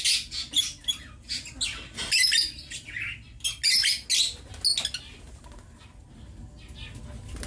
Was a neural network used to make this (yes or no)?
no